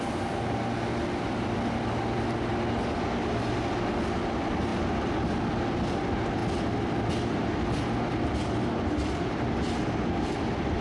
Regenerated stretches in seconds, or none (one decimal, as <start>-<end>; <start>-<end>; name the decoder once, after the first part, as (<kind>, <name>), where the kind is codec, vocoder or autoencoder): none